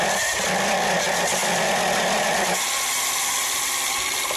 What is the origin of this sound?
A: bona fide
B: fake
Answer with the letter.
A